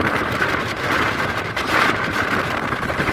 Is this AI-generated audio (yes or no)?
yes